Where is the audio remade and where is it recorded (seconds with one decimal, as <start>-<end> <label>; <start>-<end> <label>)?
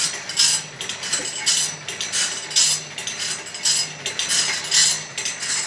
0.0-5.7 recorded